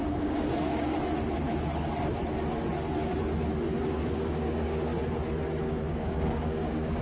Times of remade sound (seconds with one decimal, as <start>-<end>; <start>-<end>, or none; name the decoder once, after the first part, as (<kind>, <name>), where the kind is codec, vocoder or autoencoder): 0.0-0.9 (codec, DAC); 3.9-4.9; 5.7-7.0